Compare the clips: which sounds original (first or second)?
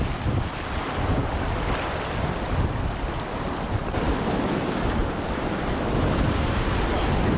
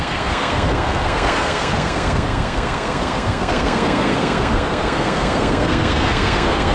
first